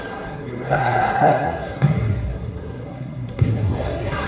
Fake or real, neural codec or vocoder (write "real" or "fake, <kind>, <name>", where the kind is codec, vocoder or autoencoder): fake, codec, SNAC